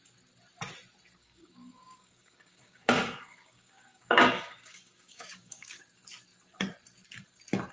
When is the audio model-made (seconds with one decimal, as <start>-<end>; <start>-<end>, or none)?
1.2-5.8